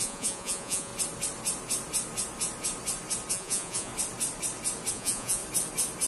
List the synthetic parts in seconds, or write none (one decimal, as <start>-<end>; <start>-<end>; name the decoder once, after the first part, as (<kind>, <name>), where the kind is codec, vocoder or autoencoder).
0.0-0.9 (vocoder, Vocos); 3.3-3.9; 4.9-5.4